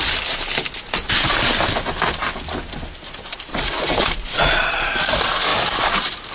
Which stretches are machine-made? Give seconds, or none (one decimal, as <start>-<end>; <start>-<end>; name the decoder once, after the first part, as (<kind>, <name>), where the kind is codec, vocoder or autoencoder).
3.5-4.5 (vocoder, Vocos)